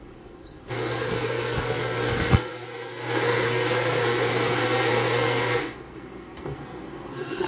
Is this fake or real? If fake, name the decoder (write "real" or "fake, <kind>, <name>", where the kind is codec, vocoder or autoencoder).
fake, codec, SNAC